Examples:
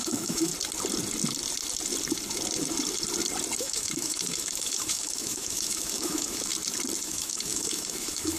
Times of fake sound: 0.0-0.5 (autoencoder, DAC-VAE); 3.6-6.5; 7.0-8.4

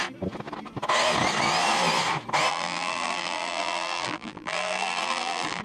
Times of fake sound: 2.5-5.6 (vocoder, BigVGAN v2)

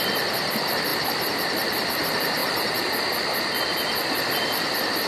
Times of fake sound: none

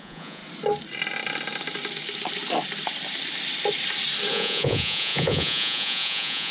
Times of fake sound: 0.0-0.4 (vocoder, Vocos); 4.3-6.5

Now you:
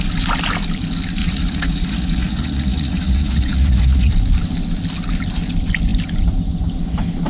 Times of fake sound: 1.2-4.1 (vocoder, Vocos)